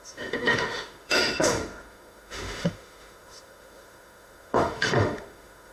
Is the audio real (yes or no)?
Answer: no